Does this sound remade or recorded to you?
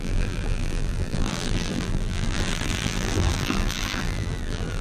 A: remade